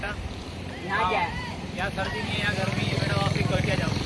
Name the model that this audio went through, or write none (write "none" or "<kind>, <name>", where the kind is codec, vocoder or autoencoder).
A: vocoder, BigVGAN v2